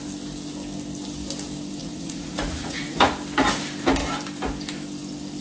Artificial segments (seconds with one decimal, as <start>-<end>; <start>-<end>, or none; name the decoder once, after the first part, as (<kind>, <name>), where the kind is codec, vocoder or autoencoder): 1.8-3.1 (vocoder, Vocos)

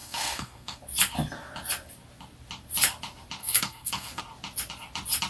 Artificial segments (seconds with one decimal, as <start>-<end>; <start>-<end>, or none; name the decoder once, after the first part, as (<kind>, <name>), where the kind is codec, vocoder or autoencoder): 0.0-0.8 (codec, SNAC); 3.4-4.2

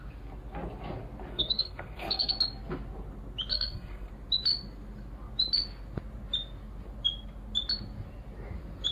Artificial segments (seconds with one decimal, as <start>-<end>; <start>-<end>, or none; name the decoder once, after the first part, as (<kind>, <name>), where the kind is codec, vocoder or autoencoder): 1.3-2.3 (codec, SNAC); 3.5-4.1

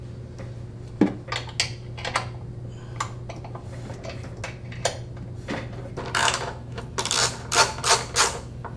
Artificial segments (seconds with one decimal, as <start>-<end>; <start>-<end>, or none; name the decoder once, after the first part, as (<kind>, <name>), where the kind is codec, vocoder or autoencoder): 6.2-6.8 (autoencoder, DAC-VAE)

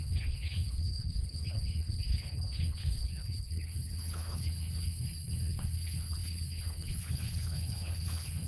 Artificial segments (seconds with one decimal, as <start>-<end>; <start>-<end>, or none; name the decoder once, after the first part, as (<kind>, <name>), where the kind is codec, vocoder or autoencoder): 0.0-8.5 (codec, HILCodec)

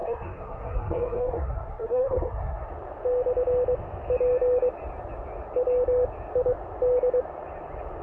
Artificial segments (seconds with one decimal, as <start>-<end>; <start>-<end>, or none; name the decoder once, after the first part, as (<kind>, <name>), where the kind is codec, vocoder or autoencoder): 0.0-2.7 (codec, SNAC)

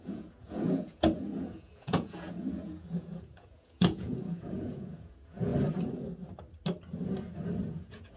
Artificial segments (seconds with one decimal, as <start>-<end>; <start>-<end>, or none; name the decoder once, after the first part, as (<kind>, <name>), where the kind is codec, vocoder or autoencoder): 0.0-5.5 (vocoder, Vocos); 7.7-8.2

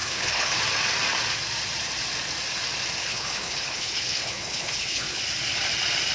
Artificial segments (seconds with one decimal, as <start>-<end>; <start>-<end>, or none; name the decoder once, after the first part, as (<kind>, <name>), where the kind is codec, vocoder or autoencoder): 0.0-0.6 (codec, HILCodec); 3.0-5.2